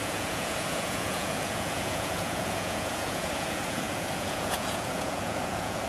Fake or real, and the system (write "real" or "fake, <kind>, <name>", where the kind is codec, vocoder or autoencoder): fake, vocoder, Vocos